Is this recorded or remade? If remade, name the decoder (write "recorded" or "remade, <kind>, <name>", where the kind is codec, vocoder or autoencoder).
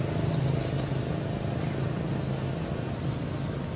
recorded